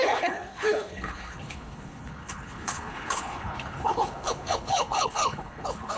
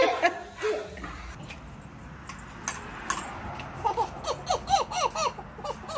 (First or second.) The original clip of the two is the second